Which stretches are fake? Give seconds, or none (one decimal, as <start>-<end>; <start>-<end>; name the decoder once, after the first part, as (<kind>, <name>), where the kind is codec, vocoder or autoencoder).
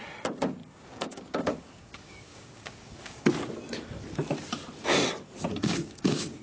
0.6-3.3 (codec, DAC); 5.5-6.4